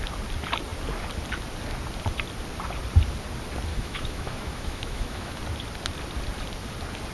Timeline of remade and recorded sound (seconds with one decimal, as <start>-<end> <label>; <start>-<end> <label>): 0.0-3.7 recorded; 3.7-5.4 remade; 5.4-7.1 recorded